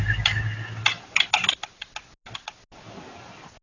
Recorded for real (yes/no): yes